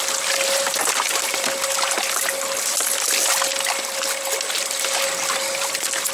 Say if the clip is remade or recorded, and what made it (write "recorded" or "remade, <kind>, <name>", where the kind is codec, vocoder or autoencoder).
recorded